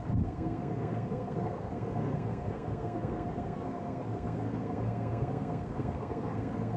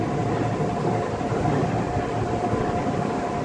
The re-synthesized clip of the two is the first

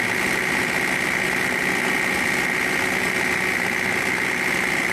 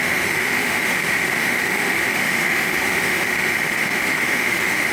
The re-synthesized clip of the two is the second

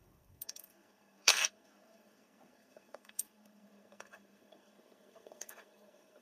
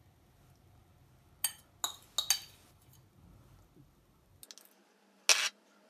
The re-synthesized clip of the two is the first